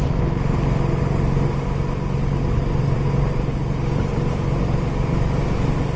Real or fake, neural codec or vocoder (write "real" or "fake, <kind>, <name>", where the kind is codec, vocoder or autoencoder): real